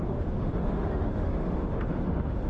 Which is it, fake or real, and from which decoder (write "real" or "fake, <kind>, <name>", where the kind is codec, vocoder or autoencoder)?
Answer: fake, autoencoder, DAC-VAE